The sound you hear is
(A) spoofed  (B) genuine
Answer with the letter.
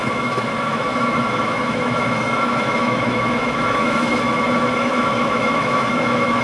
A